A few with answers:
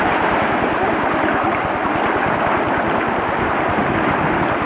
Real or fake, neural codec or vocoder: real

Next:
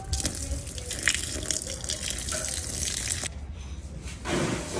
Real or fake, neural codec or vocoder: real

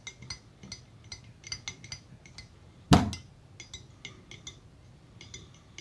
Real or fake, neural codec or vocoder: real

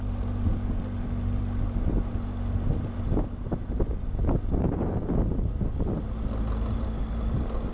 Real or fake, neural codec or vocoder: real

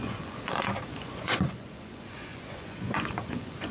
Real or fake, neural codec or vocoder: fake, vocoder, Vocos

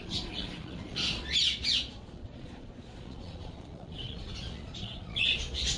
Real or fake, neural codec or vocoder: fake, vocoder, Vocos